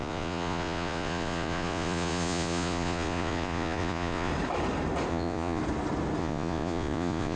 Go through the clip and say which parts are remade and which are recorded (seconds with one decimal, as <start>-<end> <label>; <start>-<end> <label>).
0.0-4.3 remade; 4.3-5.1 recorded; 5.1-5.6 remade; 5.6-6.2 recorded; 6.2-7.4 remade